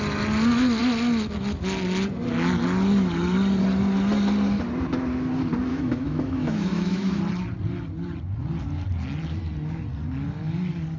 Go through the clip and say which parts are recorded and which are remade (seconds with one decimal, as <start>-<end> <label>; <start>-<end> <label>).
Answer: 0.0-5.7 recorded; 5.7-7.2 remade; 7.2-11.0 recorded